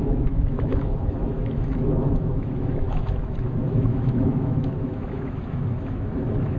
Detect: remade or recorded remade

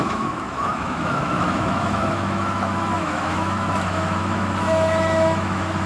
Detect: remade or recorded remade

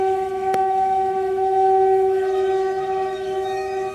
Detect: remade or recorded remade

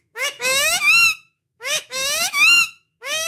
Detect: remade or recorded remade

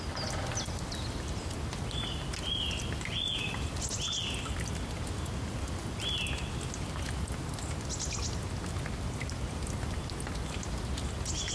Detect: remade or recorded recorded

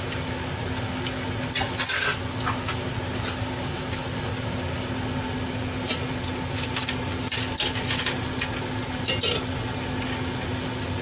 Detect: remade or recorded recorded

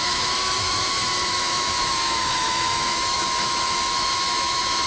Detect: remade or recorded remade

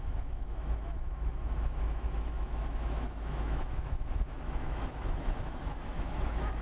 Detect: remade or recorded remade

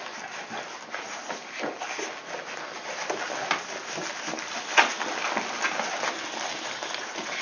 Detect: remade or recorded recorded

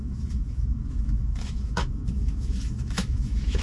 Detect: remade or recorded remade